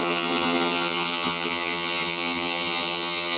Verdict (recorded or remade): remade